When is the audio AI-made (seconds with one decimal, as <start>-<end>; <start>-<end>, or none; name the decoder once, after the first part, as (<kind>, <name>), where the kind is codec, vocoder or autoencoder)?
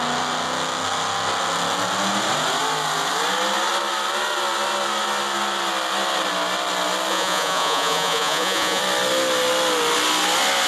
7.1-8.8 (vocoder, Vocos)